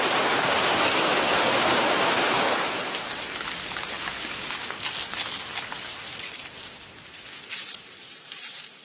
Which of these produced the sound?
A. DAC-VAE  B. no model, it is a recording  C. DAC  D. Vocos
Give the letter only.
B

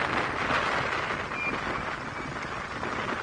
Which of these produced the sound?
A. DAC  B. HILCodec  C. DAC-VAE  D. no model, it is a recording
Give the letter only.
D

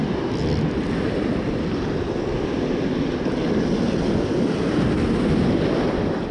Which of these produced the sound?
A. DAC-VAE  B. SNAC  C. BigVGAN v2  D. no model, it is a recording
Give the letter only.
D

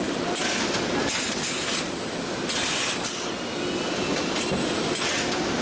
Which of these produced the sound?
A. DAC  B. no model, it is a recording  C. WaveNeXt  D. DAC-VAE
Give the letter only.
B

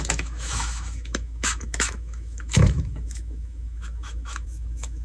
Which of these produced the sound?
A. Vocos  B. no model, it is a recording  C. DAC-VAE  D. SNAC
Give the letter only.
C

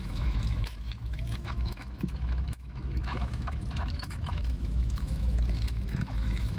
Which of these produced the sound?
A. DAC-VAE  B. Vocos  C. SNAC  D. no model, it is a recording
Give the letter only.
A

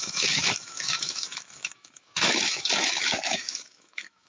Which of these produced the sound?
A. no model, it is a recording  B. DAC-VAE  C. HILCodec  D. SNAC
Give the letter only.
B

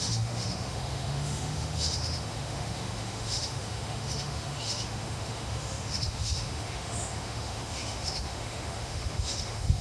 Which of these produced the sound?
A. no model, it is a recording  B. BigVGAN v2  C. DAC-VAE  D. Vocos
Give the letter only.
C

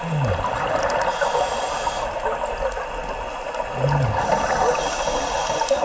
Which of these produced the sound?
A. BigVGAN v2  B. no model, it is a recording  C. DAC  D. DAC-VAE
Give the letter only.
B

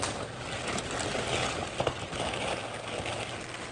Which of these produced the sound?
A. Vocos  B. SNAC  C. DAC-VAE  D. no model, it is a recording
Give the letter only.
D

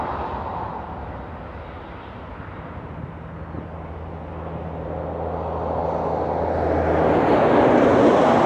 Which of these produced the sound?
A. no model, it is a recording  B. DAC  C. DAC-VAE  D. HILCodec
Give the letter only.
A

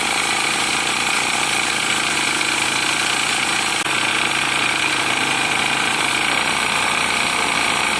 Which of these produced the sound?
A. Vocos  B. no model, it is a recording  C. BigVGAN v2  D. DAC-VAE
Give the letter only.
B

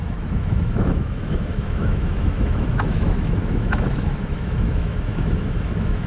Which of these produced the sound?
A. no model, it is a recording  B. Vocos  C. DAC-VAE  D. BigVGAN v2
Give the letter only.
C